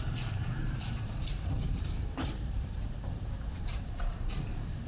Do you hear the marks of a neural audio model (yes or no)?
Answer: yes